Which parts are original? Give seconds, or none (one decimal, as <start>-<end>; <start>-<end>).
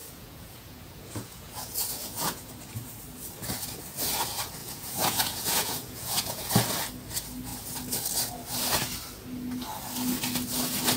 2.5-4.6; 6.5-11.0